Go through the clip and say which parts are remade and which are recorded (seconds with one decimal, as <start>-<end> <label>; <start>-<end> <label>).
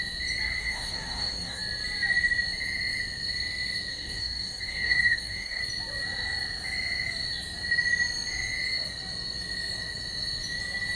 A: 0.0-0.6 recorded; 0.6-1.6 remade; 1.6-3.9 recorded; 3.9-5.6 remade; 5.6-11.0 recorded